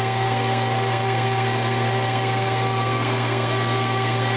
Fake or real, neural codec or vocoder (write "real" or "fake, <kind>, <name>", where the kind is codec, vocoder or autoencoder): fake, codec, SNAC